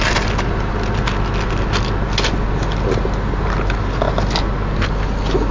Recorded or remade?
recorded